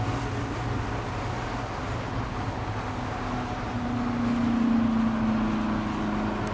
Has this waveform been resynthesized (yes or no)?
no